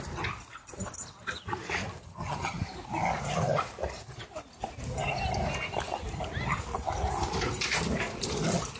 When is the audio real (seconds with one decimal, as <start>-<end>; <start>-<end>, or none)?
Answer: 0.0-2.0; 2.6-8.8